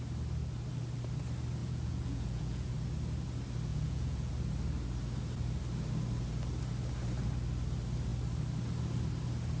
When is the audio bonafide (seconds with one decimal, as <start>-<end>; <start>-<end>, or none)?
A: 0.0-1.6; 2.7-3.7; 4.3-9.6